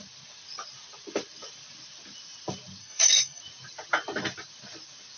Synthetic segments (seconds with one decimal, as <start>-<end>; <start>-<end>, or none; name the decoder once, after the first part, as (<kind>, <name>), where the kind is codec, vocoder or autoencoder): 2.8-3.4 (codec, SNAC)